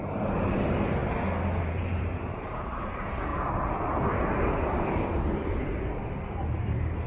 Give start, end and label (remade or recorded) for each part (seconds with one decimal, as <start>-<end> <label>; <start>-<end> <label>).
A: 0.0-1.0 remade; 1.0-1.6 recorded; 1.6-3.3 remade; 3.3-5.6 recorded; 5.6-6.0 remade; 6.0-6.6 recorded; 6.6-7.1 remade